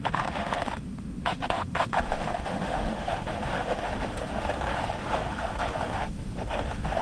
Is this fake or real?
fake